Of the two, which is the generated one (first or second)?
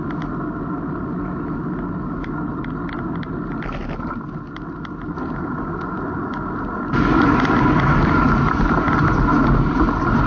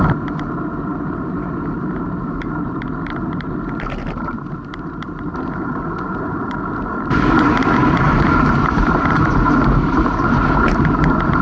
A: second